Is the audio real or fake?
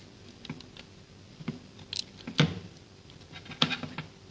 real